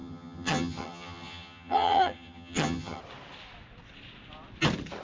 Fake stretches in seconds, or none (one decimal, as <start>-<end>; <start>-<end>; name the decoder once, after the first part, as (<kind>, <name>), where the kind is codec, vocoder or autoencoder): 0.0-3.0 (vocoder, HiFi-GAN)